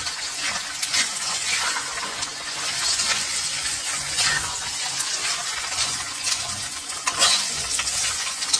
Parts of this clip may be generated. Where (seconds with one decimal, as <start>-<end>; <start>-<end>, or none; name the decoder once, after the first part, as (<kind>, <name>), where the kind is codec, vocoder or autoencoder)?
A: 0.0-8.6 (vocoder, Vocos)